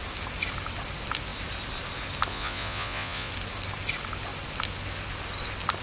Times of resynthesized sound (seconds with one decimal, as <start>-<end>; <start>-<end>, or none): 2.3-3.3